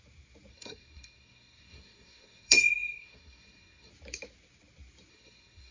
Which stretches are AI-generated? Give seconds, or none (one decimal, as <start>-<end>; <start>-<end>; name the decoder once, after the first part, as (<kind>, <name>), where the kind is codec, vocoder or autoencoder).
0.5-3.9 (codec, SNAC); 5.1-5.7